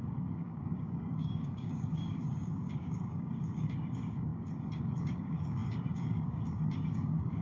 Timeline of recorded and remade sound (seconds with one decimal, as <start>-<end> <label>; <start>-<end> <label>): 0.0-7.4 remade